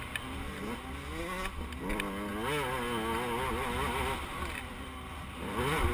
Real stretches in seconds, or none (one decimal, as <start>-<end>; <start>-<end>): 0.0-5.9